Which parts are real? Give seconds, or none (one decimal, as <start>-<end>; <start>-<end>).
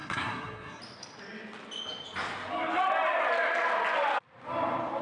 0.8-5.0